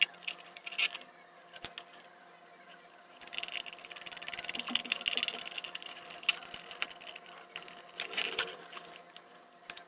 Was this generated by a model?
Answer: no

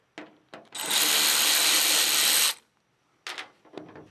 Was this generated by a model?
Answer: no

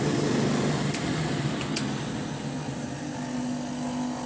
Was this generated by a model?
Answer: no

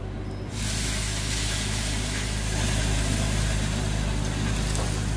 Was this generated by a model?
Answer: no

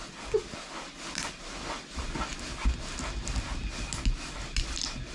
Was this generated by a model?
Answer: no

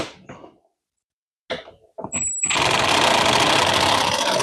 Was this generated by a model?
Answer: no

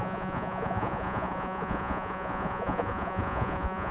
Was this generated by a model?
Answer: yes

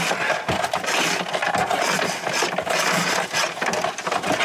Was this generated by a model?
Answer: no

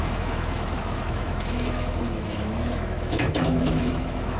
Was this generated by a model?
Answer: yes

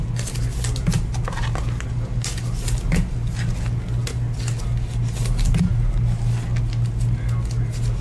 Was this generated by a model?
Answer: no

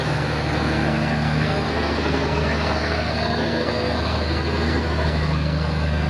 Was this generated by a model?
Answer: yes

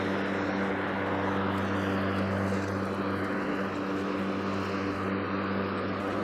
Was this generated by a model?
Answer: no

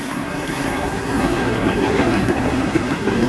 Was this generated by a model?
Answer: yes